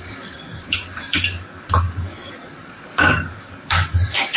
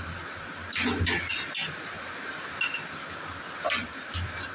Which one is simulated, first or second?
first